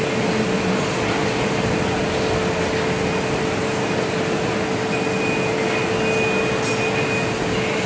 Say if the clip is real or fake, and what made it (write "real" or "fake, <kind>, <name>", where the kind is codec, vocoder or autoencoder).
real